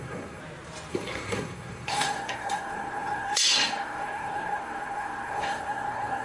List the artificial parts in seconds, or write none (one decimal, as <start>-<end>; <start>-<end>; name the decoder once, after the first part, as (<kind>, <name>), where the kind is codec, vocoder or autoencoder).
0.0-0.4 (codec, SNAC); 0.9-6.2